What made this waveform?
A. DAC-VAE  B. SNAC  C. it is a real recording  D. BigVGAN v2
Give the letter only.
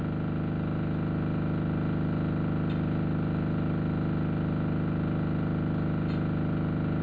C